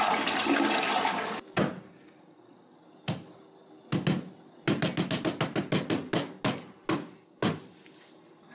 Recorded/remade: recorded